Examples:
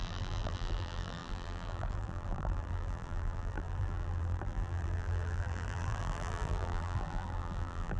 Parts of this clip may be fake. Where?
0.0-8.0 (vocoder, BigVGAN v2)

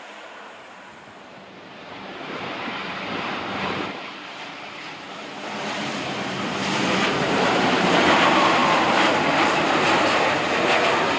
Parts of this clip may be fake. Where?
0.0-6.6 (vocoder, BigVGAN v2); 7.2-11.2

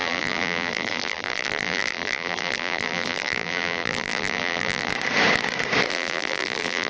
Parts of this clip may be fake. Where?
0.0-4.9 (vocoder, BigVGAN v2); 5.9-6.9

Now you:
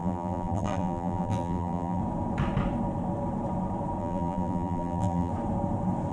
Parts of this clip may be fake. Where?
0.0-2.0 (vocoder, BigVGAN v2); 4.0-5.3